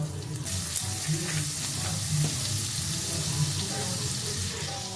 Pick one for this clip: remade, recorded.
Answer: recorded